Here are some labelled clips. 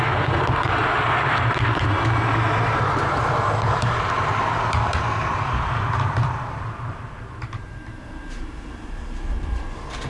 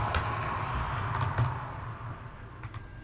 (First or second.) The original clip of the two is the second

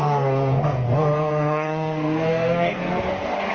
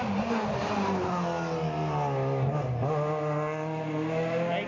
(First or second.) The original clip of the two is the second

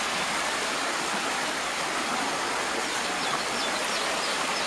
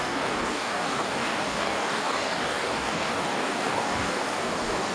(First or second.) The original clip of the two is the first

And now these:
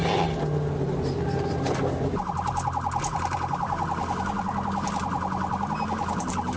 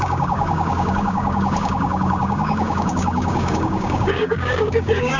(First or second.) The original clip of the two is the first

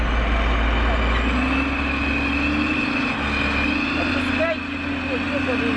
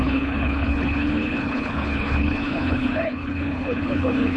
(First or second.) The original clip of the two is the first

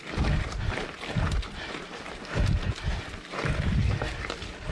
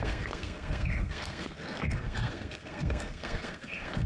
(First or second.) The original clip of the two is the first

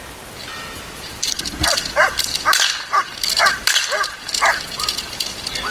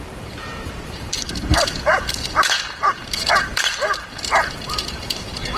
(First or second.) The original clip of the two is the first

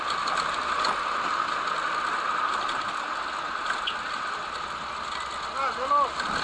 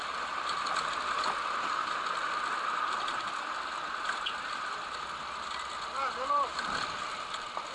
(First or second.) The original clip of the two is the first